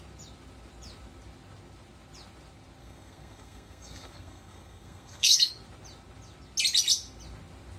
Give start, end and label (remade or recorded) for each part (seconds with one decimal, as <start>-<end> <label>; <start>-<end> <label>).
0.0-2.8 recorded; 2.8-5.5 remade; 5.5-7.8 recorded